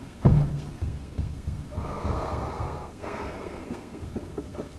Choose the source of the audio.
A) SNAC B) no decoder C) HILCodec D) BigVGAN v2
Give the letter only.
A